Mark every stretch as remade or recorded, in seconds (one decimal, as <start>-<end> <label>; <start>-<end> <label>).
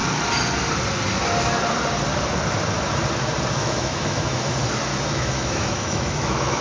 0.0-3.6 recorded; 3.6-4.5 remade; 4.5-4.9 recorded; 4.9-6.6 remade